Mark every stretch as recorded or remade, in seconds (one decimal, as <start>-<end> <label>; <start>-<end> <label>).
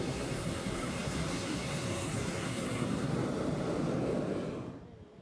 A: 0.0-3.1 remade; 3.1-5.2 recorded